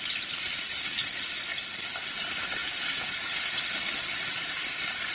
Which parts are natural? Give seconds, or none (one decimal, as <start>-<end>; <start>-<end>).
0.0-2.6; 3.5-5.1